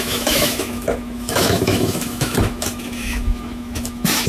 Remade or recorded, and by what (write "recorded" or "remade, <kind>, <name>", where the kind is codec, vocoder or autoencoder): remade, autoencoder, DAC-VAE